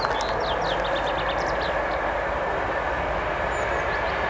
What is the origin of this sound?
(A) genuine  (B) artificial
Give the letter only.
A